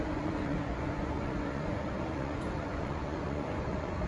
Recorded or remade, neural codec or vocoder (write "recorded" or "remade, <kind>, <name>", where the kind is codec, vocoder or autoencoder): remade, vocoder, Vocos